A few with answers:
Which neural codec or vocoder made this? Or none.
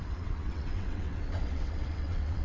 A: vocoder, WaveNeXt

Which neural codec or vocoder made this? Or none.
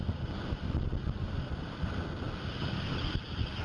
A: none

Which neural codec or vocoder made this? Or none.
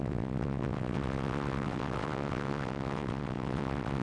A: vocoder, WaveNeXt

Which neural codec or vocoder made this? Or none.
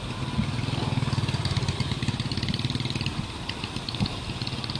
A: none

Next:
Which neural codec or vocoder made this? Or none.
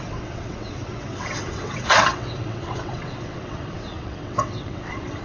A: vocoder, WaveNeXt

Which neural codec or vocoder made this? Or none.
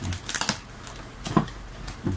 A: none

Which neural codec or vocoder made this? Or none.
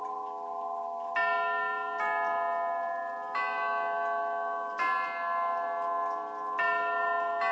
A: none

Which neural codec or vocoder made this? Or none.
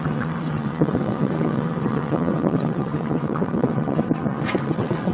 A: vocoder, WaveNeXt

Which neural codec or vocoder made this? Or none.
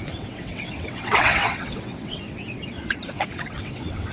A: vocoder, WaveNeXt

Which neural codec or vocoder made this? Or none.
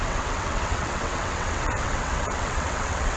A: vocoder, WaveNeXt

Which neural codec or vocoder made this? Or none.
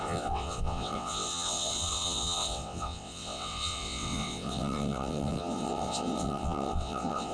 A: vocoder, WaveNeXt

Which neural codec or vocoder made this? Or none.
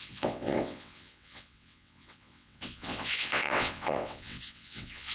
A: vocoder, WaveNeXt